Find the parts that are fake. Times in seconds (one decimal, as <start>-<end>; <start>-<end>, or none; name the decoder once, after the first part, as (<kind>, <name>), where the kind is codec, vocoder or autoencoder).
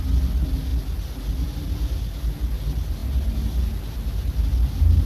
none